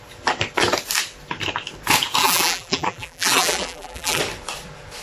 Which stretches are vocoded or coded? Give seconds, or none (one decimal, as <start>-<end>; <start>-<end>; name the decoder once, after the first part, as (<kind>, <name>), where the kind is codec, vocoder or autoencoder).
2.2-4.2 (vocoder, BigVGAN v2)